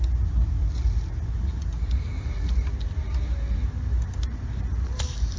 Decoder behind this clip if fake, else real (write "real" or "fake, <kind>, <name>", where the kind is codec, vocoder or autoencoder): real